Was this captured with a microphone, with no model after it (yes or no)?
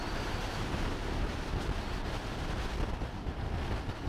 yes